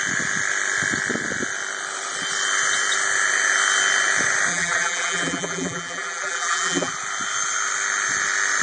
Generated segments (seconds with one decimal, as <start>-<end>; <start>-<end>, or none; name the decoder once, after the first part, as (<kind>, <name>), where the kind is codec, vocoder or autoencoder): 4.5-6.9 (vocoder, BigVGAN v2)